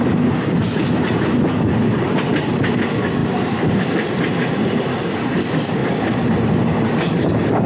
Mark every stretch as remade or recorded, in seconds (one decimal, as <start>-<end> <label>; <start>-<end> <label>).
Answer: 0.0-3.2 recorded; 3.2-4.2 remade; 4.2-5.8 recorded; 5.8-6.9 remade; 6.9-7.7 recorded